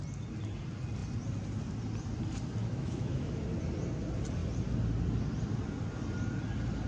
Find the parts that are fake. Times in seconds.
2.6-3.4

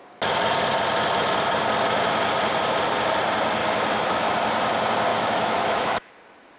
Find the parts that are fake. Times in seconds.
3.6-4.3; 5.1-6.1

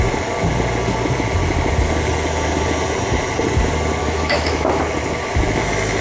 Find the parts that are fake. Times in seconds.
4.0-4.8

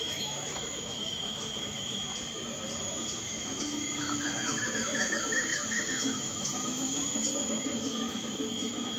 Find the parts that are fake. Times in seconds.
0.0-2.1; 2.8-9.0